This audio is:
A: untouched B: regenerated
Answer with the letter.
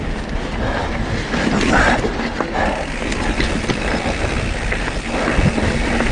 A